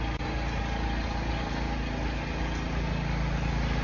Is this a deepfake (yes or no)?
no